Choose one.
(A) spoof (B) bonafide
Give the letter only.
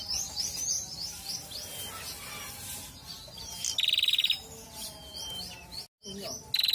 B